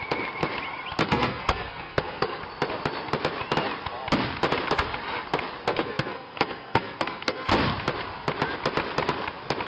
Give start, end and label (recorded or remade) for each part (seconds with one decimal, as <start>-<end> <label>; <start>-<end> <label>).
0.0-1.0 recorded; 1.0-2.4 remade; 2.4-5.7 recorded; 5.7-7.5 remade; 7.5-9.7 recorded